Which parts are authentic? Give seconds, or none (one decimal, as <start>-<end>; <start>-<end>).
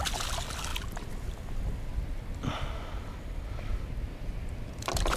0.0-5.2